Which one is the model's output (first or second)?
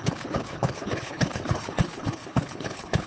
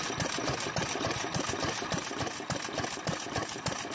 first